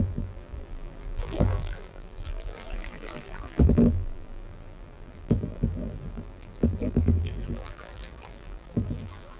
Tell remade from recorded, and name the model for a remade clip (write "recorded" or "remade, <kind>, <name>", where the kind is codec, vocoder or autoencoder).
remade, vocoder, BigVGAN v2